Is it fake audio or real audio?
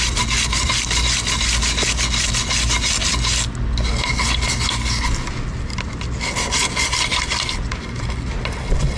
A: real